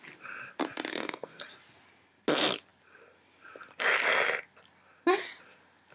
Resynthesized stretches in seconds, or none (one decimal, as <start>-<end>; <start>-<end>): 0.9-1.4